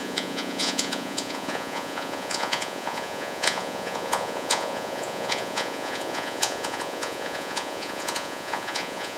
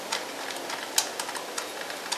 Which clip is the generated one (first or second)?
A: first